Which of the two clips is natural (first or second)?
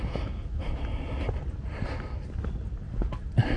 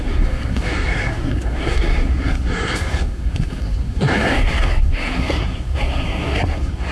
first